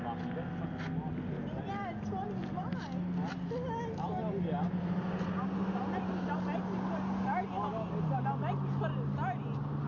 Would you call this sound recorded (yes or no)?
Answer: yes